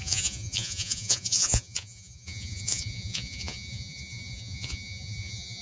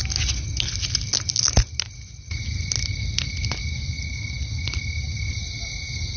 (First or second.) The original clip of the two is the second